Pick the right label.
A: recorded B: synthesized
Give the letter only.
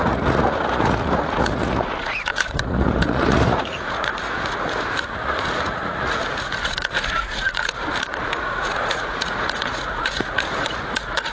B